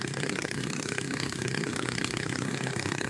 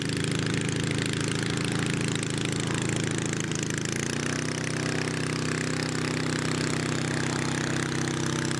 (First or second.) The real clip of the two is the second